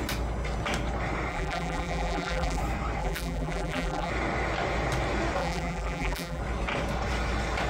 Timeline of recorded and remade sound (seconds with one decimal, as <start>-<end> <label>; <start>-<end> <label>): 0.0-1.3 recorded; 1.3-2.6 remade; 2.6-3.0 recorded; 3.0-4.1 remade; 4.1-5.4 recorded; 5.4-6.4 remade; 6.4-7.7 recorded